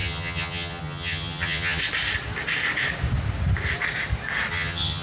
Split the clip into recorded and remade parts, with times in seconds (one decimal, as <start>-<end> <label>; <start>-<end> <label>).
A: 0.0-1.8 remade; 1.8-4.5 recorded; 4.5-5.0 remade